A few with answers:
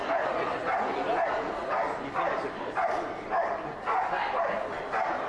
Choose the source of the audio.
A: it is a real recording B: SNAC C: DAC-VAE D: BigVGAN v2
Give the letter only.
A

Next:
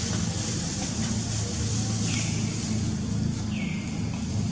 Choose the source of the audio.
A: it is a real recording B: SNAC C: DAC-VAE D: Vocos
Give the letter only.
A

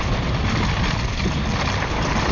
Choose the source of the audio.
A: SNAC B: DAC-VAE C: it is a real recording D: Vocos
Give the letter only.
C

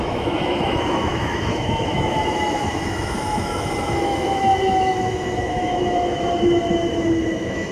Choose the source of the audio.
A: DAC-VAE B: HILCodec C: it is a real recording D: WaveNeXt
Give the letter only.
A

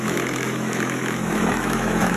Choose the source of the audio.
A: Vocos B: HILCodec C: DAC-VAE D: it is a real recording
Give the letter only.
C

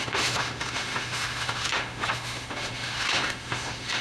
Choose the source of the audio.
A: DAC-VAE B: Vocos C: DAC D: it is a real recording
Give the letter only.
A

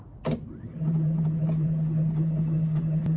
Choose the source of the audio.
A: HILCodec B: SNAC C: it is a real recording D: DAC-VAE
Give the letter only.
C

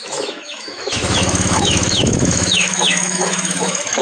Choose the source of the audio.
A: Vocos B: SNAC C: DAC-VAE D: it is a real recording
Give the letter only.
C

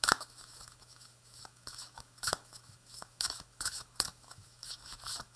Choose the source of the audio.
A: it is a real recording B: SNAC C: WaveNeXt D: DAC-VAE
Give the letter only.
D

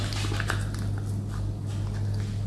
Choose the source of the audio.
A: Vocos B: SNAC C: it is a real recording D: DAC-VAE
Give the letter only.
C